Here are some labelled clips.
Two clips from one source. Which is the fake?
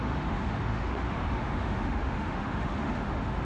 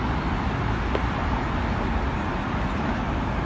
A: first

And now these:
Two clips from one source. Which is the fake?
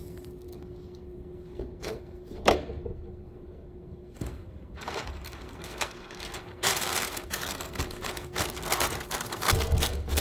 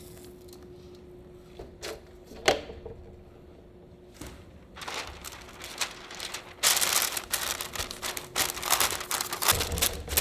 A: first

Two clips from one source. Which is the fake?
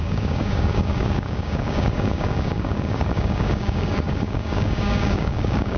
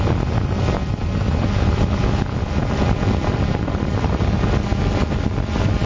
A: first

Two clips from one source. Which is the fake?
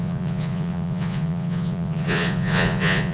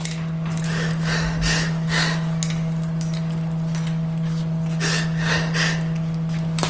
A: first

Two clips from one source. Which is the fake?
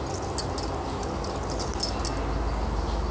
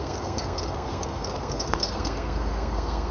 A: second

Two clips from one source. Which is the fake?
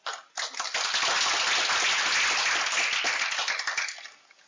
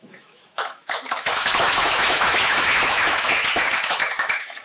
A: second